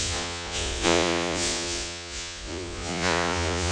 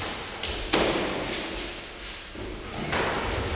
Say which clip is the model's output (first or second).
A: first